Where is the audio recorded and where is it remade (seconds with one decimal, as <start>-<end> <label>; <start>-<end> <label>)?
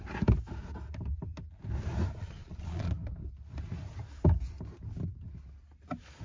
0.0-2.2 recorded; 2.2-2.9 remade; 2.9-6.2 recorded